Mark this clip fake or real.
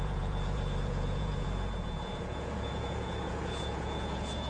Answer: fake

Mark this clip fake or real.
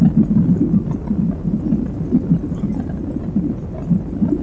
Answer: real